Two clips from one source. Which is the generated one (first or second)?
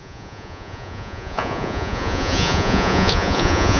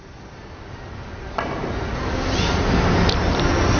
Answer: first